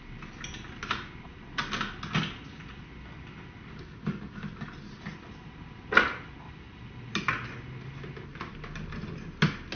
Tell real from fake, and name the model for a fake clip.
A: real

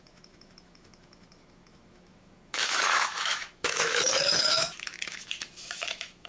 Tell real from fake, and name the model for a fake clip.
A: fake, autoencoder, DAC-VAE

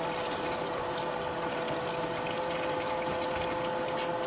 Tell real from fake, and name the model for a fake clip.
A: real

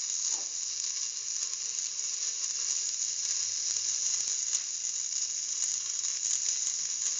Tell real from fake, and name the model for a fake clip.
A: real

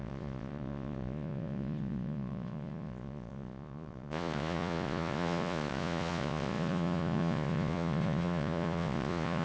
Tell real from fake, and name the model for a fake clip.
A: fake, vocoder, Vocos